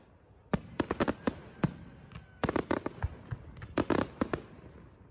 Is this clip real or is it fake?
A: real